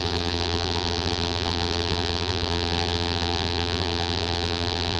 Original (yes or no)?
no